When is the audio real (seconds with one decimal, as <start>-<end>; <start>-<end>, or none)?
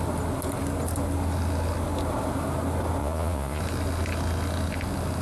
0.0-3.0; 3.6-5.2